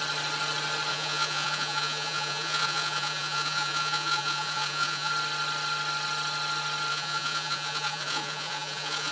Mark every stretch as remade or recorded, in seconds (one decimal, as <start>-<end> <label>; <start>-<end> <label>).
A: 0.0-0.9 recorded; 0.9-5.1 remade; 5.1-6.9 recorded; 6.9-9.1 remade